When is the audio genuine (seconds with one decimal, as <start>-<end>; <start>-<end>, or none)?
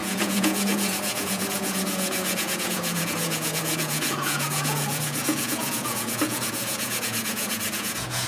none